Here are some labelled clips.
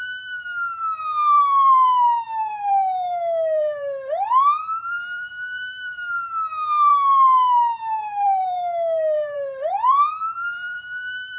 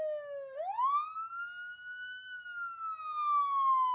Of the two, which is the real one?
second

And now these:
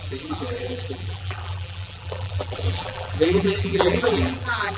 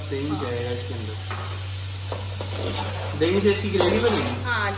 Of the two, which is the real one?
second